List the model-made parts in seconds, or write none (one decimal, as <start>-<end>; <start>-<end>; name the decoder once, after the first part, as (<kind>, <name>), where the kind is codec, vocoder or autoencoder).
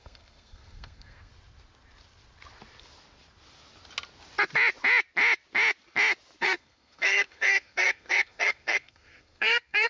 0.0-1.3 (codec, SNAC); 6.4-9.9